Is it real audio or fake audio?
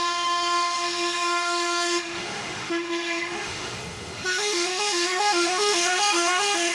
fake